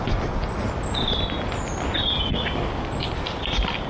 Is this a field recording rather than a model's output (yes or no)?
yes